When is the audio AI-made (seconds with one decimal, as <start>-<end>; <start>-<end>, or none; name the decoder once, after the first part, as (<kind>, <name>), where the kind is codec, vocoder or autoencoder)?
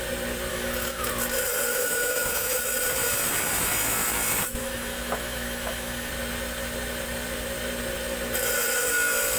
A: 0.5-1.1 (autoencoder, DAC-VAE); 1.7-2.6; 4.6-6.1